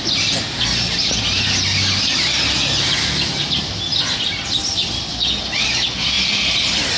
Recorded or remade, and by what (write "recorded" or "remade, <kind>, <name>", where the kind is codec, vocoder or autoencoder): recorded